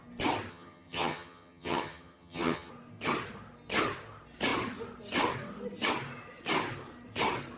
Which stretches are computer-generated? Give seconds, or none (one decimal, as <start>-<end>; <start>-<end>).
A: 0.5-2.7